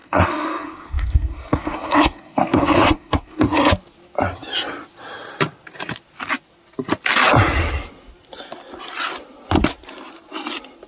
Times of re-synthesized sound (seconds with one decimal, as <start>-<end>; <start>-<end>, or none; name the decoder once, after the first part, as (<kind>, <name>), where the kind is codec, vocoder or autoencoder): 0.0-3.7 (codec, SNAC)